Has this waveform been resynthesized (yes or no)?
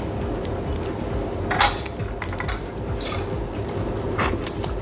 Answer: no